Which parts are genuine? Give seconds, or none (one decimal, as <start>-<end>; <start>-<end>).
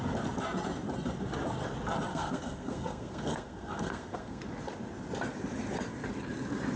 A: 0.0-2.1; 4.4-6.8